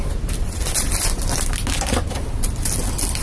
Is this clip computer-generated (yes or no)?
no